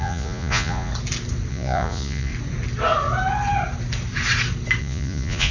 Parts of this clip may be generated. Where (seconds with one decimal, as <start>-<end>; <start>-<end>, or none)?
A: 0.0-0.9; 1.5-2.3; 4.8-5.5